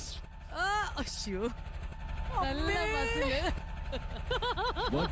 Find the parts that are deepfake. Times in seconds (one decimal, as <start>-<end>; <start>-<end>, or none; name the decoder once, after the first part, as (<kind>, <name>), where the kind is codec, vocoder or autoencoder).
none